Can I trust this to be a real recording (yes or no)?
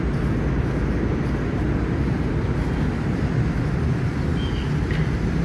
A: yes